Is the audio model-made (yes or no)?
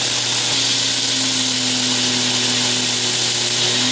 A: no